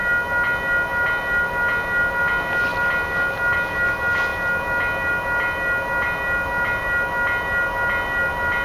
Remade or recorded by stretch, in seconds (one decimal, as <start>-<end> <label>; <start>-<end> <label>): 0.0-8.6 recorded